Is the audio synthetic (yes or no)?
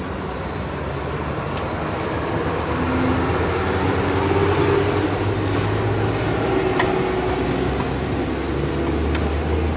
no